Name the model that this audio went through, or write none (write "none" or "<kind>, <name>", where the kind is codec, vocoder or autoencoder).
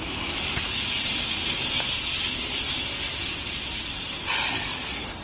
none